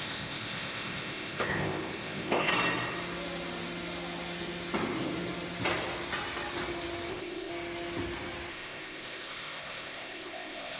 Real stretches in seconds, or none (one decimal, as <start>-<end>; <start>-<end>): 2.5-7.1; 7.5-8.5